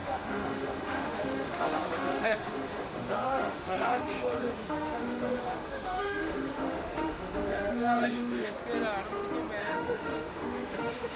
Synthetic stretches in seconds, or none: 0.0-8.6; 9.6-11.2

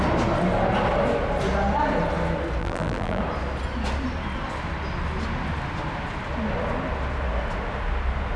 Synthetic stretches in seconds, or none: 2.6-3.2

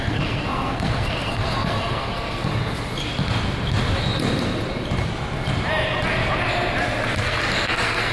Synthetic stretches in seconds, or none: 0.0-2.5; 7.2-8.1

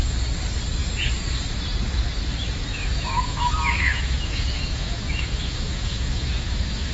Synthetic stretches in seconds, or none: 2.7-6.9